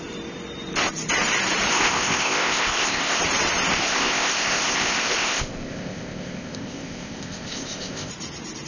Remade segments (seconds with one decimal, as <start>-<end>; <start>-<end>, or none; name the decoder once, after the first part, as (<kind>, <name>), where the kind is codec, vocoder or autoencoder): 1.7-3.2 (codec, ZipCodec); 3.7-8.1